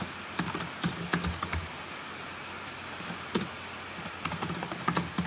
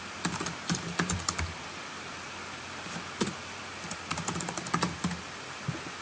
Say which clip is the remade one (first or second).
second